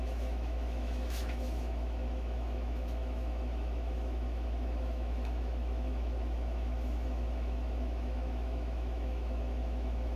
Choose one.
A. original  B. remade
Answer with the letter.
B